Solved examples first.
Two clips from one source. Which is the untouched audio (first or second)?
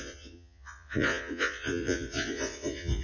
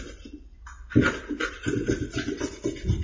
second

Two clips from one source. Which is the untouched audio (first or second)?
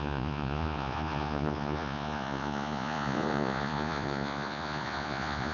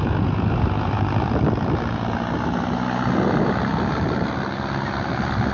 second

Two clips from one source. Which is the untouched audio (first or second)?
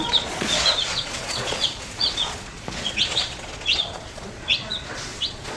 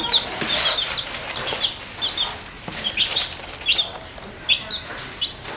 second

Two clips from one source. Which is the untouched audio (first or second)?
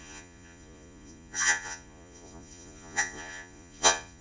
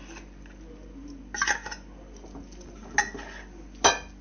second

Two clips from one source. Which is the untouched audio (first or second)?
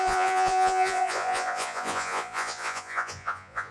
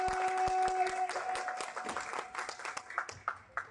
second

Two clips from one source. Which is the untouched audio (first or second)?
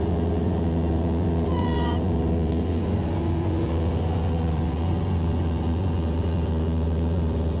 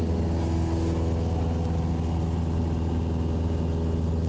second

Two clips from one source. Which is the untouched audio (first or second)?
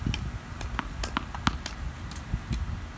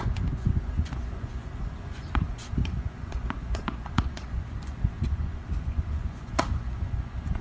first